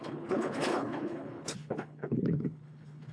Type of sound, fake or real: fake